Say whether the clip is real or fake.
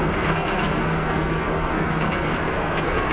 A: fake